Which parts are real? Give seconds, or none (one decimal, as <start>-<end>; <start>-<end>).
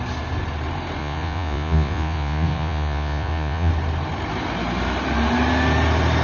0.0-1.0; 3.7-6.2